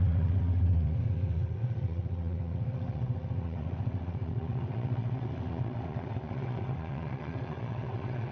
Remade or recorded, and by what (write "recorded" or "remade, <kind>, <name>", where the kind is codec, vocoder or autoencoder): remade, vocoder, WaveNeXt